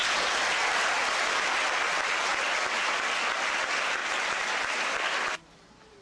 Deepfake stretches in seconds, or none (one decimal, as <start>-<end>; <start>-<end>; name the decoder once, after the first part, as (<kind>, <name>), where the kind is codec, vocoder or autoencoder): none

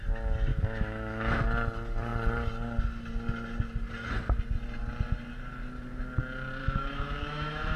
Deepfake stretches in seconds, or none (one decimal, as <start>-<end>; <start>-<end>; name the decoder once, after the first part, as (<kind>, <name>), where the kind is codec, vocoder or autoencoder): 0.5-1.4 (autoencoder, DAC-VAE); 6.6-7.8

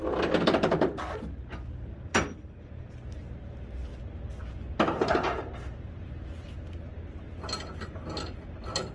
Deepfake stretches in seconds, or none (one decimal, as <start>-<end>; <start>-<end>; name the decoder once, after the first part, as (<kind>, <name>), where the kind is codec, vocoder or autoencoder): none

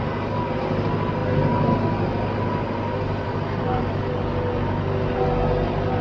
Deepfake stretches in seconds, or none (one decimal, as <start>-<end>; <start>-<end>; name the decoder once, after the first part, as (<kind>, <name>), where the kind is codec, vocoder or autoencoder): none

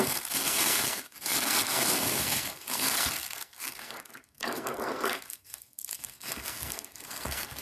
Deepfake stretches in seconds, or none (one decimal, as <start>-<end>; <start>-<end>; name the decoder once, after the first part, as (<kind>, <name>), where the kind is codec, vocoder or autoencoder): 0.0-7.6 (codec, SNAC)

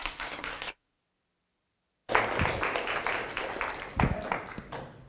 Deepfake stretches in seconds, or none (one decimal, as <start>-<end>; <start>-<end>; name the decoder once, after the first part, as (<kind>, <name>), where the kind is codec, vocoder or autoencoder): 0.0-1.0 (codec, SNAC)

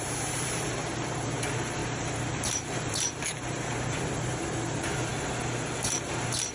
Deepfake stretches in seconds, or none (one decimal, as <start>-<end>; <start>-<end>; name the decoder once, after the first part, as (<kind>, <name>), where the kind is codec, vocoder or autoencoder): 0.0-5.1 (vocoder, BigVGAN v2); 6.0-6.5

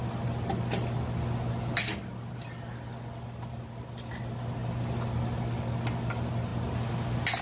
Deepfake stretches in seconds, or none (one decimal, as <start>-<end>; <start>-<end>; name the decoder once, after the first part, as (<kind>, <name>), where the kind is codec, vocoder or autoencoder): none